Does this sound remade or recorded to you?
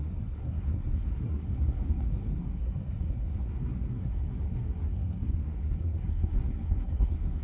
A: remade